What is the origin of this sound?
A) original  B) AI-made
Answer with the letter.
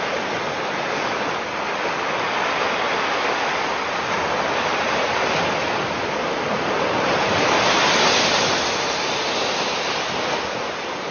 A